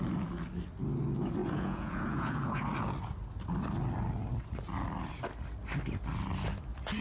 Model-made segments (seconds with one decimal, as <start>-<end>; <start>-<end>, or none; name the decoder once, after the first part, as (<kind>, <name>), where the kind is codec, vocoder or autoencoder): 1.4-2.7 (vocoder, Vocos)